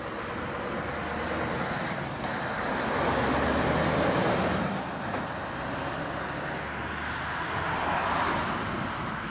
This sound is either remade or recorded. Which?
recorded